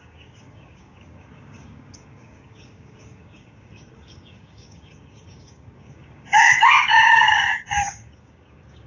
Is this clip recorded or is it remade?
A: remade